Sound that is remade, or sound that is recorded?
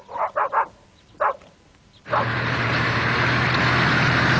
recorded